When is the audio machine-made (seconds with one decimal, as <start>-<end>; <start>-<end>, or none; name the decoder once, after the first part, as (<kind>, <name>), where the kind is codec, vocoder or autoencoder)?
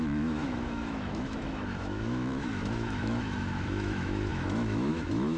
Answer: 0.0-5.4 (autoencoder, DAC-VAE)